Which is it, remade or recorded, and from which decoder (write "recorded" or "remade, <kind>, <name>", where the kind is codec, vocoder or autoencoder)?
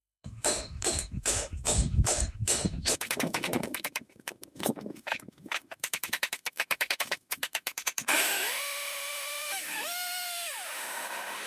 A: remade, autoencoder, DAC-VAE